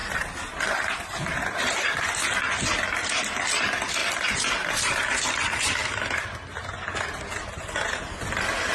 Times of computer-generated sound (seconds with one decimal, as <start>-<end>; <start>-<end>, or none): none